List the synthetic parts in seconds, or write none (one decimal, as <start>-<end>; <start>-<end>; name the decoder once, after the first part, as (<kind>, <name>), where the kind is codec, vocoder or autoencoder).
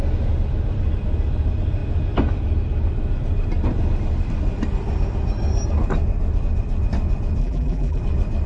7.4-8.0 (vocoder, BigVGAN v2)